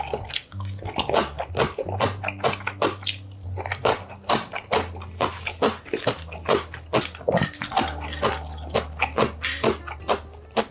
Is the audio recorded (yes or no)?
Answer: yes